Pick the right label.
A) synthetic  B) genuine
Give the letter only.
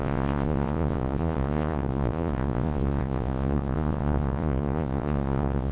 A